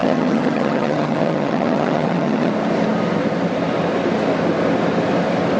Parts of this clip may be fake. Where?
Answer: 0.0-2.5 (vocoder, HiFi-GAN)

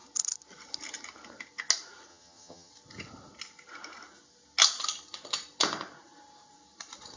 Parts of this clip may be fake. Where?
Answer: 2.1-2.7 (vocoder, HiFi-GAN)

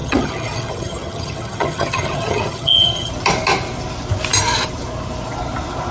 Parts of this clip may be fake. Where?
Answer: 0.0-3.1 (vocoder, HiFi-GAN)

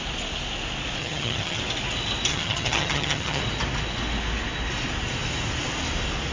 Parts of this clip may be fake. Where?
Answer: 1.0-1.6 (vocoder, HiFi-GAN); 2.3-3.4

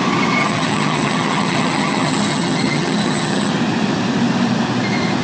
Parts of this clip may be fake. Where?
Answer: 0.4-3.5 (vocoder, HiFi-GAN)

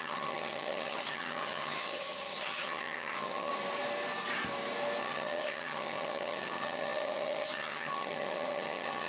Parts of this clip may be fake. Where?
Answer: 0.0-3.5 (vocoder, HiFi-GAN); 5.0-9.1